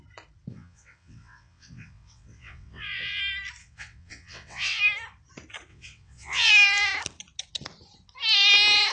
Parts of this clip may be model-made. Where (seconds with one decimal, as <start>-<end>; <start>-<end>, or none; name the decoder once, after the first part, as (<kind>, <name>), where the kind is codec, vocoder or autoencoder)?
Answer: 0.5-3.2 (vocoder, WaveNeXt); 3.6-4.8; 5.7-6.5